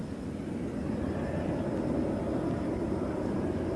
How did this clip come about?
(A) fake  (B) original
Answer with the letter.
B